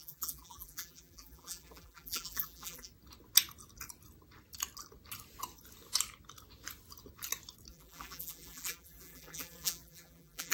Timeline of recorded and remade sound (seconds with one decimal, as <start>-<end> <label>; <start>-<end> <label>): 0.0-2.9 remade; 2.9-7.7 recorded; 7.7-10.5 remade